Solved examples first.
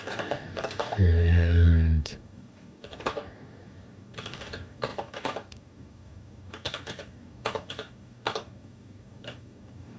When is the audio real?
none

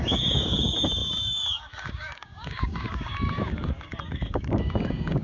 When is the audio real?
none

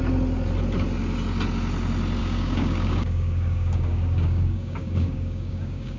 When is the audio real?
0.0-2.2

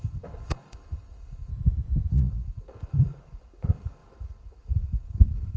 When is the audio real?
1.5-2.1

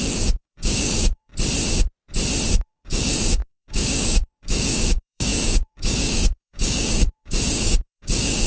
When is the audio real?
1.3-2.5

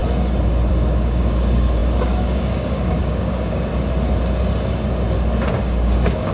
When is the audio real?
0.0-0.7; 3.7-5.5